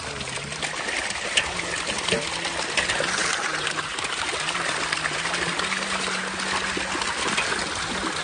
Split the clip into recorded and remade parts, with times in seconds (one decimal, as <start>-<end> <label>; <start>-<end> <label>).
0.0-8.2 recorded